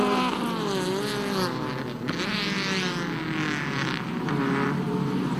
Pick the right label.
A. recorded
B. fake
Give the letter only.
A